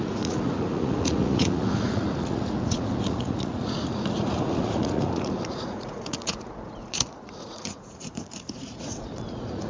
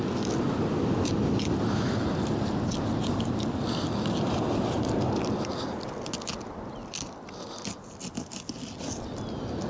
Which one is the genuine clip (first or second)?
second